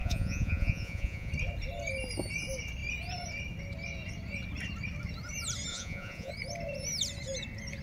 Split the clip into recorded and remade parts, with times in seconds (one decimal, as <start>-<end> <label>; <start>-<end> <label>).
0.0-1.3 remade; 1.3-5.7 recorded; 5.7-6.3 remade; 6.3-7.8 recorded